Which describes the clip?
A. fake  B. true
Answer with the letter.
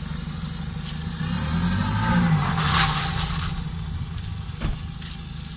B